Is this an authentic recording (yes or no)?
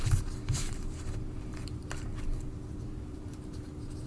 no